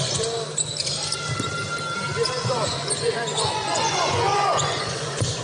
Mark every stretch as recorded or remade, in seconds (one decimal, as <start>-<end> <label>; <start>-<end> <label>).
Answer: 0.0-2.4 recorded; 2.4-5.4 remade